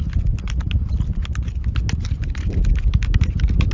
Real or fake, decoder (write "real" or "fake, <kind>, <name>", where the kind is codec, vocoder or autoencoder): real